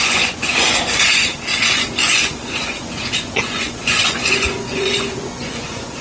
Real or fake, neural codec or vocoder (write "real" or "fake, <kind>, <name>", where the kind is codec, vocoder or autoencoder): fake, vocoder, Vocos